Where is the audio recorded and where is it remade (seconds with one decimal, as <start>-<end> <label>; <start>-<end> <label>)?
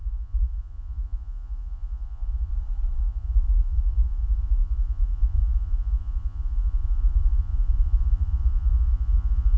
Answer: 0.0-2.5 remade; 2.5-3.0 recorded; 3.0-9.6 remade